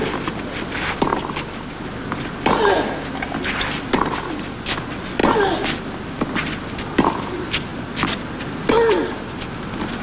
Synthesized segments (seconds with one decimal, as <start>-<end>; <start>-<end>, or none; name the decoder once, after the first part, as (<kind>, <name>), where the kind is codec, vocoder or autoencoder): none